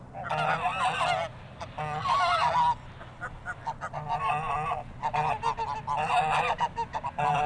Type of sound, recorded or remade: recorded